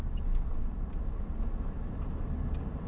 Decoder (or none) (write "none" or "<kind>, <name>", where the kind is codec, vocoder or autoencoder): none